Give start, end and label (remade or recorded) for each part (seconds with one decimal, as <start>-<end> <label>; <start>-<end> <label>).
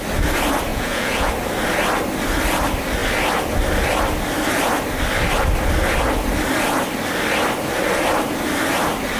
0.0-0.7 recorded; 0.7-1.3 remade; 1.3-9.2 recorded